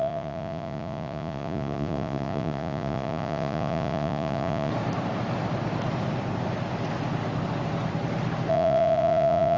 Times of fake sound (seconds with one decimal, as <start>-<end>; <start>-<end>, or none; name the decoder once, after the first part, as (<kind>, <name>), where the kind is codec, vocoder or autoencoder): 0.0-4.7 (vocoder, Vocos); 8.5-9.6